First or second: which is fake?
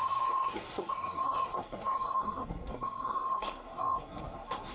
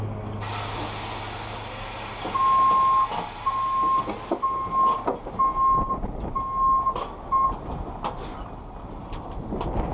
first